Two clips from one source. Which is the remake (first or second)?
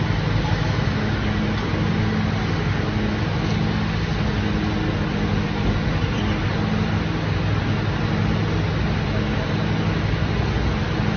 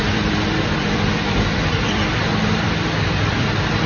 second